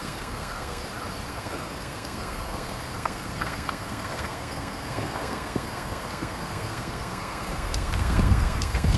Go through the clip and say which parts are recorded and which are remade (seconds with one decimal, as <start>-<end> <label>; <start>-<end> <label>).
0.0-0.8 remade; 0.8-1.3 recorded; 1.3-9.0 remade